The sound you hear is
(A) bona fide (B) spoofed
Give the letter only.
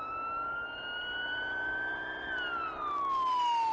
A